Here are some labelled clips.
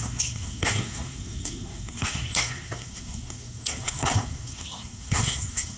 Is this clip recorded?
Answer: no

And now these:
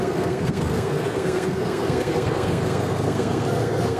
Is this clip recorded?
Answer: no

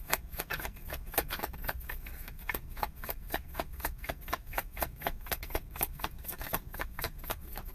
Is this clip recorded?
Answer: no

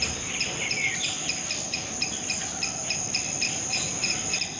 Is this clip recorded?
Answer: yes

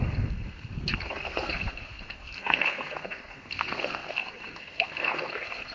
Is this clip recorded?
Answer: no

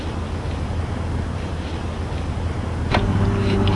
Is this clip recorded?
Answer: yes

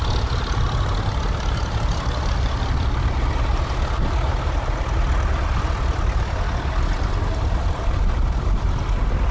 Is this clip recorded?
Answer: yes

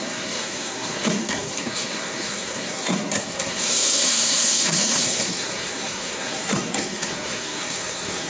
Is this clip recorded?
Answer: no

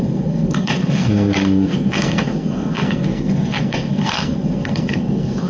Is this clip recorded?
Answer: no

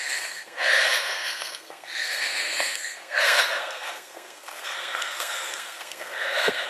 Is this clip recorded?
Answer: no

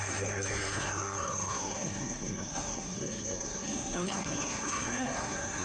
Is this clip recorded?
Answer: no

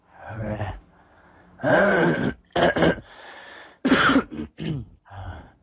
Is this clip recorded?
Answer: yes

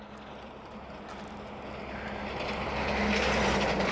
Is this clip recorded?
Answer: yes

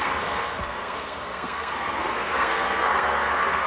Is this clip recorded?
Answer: no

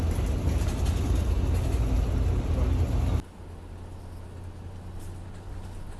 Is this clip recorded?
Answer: yes